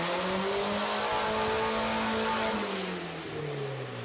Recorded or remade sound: recorded